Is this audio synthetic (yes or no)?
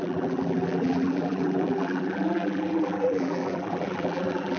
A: yes